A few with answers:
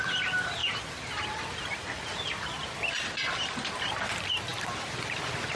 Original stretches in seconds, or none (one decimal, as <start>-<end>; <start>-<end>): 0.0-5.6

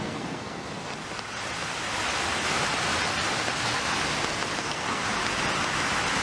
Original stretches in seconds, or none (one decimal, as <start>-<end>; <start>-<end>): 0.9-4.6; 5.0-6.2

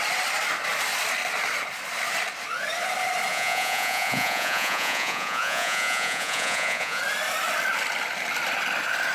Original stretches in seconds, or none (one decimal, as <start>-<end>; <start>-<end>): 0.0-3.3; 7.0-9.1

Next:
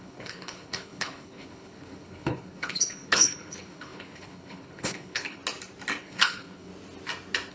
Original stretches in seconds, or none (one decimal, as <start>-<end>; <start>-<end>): 5.4-6.0; 6.7-7.5

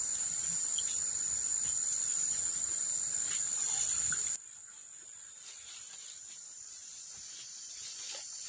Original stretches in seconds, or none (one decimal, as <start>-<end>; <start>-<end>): 0.0-2.1; 2.9-6.4; 8.1-8.5